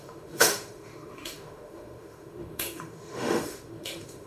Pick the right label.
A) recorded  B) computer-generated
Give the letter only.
B